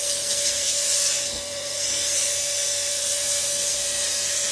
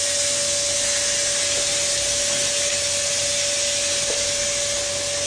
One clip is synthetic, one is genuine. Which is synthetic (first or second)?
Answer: first